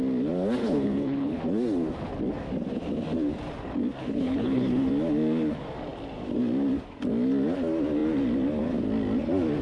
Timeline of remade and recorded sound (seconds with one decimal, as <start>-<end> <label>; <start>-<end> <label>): 0.0-0.6 recorded; 0.6-1.4 remade; 1.4-4.0 recorded; 4.0-4.9 remade; 4.9-9.6 recorded